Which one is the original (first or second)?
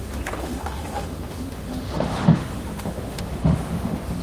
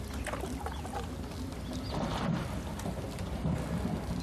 second